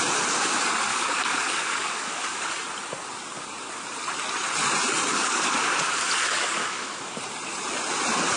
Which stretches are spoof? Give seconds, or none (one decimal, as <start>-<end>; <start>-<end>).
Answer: 0.9-2.5; 5.1-7.2